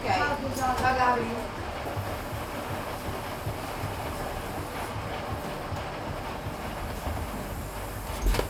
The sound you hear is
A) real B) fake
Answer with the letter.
A